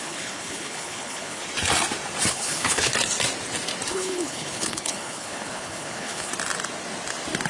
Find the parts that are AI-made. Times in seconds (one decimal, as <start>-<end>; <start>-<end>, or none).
0.0-1.4; 2.3-2.9; 3.9-6.3